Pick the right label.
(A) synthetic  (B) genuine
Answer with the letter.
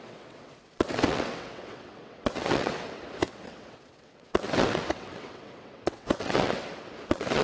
A